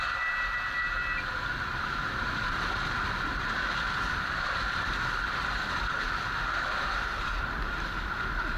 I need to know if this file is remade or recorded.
recorded